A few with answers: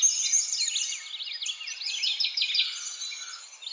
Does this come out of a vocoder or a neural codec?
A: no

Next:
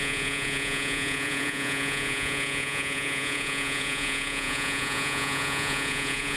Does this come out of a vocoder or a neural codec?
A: yes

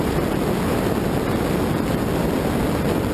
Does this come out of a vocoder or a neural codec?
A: no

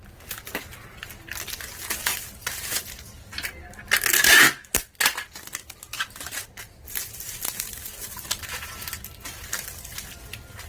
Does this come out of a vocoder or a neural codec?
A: no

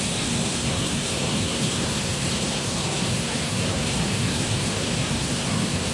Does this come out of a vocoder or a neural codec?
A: yes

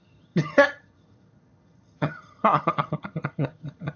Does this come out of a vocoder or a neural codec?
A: yes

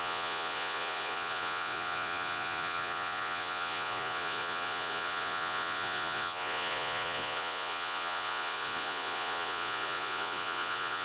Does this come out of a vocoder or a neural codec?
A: yes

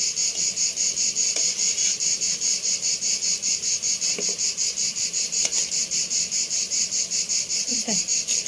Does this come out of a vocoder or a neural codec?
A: yes